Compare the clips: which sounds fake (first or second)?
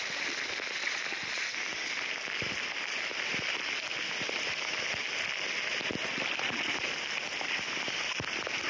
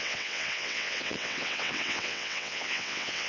second